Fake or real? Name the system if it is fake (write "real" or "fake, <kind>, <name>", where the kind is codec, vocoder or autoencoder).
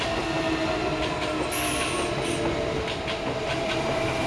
real